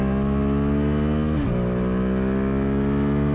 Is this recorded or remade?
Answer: recorded